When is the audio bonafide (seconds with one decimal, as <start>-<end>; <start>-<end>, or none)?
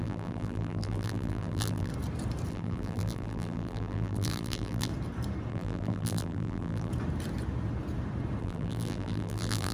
1.9-2.5; 4.9-5.5; 6.9-8.4